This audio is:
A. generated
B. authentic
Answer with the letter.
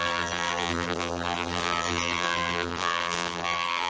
A